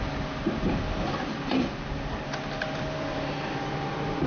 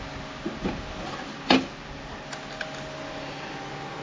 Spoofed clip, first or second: first